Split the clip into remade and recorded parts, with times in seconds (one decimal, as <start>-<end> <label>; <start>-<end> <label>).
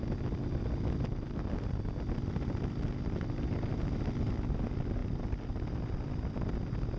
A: 0.0-5.0 recorded; 5.0-7.0 remade